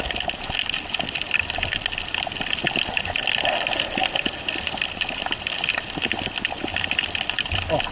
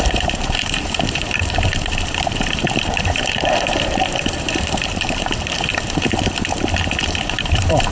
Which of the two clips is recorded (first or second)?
first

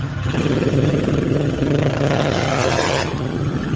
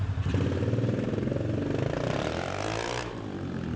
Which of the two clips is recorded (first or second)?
second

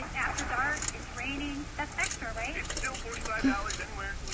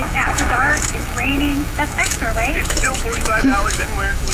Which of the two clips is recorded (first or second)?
first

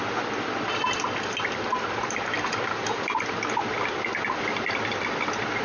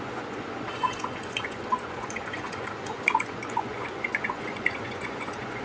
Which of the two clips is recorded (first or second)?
first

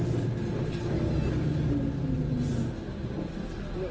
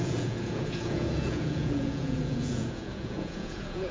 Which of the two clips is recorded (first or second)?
first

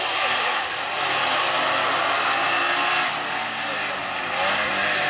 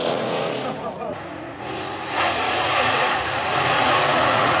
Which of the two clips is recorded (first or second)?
first